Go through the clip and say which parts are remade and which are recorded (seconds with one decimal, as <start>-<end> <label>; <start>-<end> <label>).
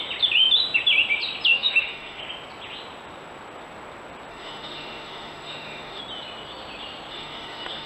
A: 0.0-1.5 recorded; 1.5-2.2 remade; 2.2-4.3 recorded; 4.3-6.0 remade; 6.0-7.1 recorded; 7.1-7.9 remade